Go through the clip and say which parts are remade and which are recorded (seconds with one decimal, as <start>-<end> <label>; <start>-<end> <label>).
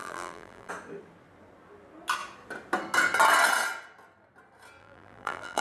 0.0-0.7 remade; 0.7-4.8 recorded; 4.8-5.6 remade